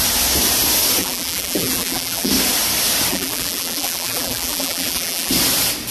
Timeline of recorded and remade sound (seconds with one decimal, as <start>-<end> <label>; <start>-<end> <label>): 0.0-1.0 recorded; 1.0-2.3 remade; 2.3-3.1 recorded; 3.1-5.3 remade; 5.3-5.9 recorded